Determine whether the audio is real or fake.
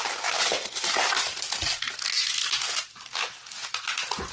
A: real